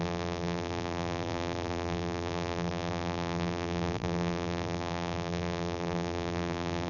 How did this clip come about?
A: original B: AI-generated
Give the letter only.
B